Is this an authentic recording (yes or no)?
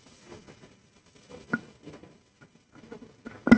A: yes